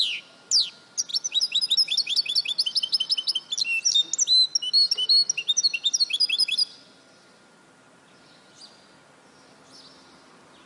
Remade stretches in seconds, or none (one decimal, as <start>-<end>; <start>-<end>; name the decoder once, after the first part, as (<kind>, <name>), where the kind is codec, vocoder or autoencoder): 1.1-1.7 (vocoder, BigVGAN v2)